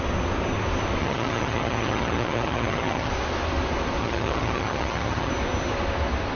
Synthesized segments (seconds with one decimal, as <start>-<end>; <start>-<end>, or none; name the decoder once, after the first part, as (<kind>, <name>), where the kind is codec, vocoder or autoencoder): 1.0-3.1 (vocoder, HiFi-GAN); 4.0-5.3